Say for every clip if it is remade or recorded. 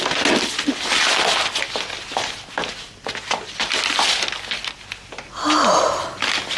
recorded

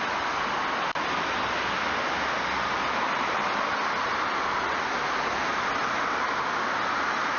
recorded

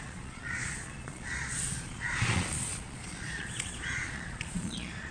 remade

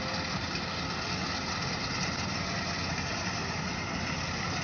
recorded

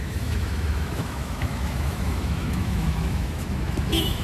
remade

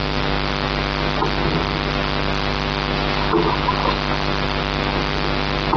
recorded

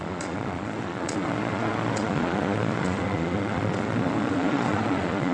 remade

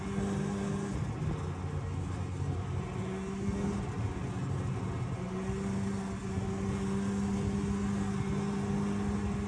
recorded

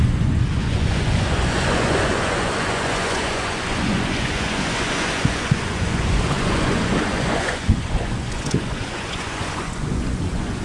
remade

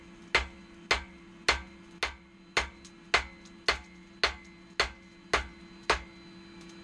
recorded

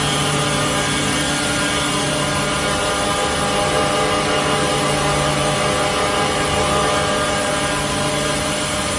recorded